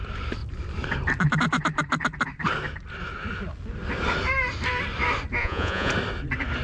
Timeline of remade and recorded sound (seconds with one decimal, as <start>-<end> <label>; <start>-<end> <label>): 0.0-5.4 recorded; 5.4-5.9 remade; 5.9-6.6 recorded